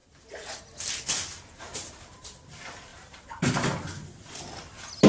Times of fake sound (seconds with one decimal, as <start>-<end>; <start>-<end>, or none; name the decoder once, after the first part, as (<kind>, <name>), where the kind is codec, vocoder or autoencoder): 1.7-2.3 (vocoder, BigVGAN v2); 2.9-4.3